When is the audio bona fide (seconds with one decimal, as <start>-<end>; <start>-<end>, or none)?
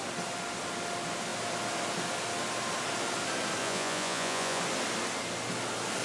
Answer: 0.0-3.6; 4.6-6.0